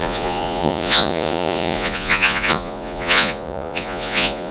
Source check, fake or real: fake